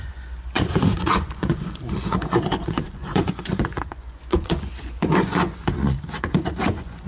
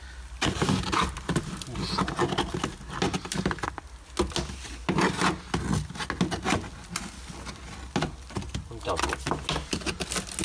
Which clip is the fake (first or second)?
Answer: first